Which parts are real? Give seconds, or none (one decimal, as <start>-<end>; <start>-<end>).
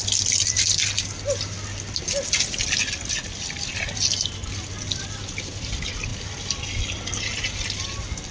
0.0-8.3